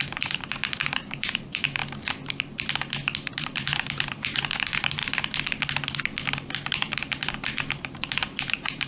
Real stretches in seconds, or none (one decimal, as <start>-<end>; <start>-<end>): 1.8-3.3; 5.0-6.7